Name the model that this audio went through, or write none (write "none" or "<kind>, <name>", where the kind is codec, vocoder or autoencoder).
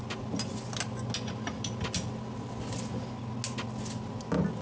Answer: none